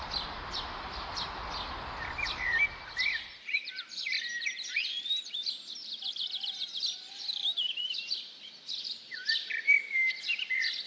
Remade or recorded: recorded